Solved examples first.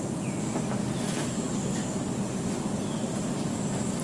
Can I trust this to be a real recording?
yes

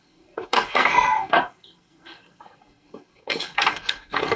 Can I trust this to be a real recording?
no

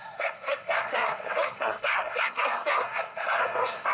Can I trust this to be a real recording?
no